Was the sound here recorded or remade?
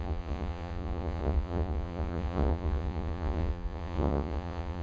remade